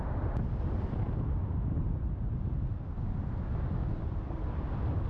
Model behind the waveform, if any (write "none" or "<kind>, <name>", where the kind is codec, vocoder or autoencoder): none